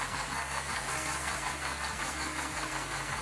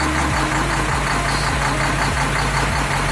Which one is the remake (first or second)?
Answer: first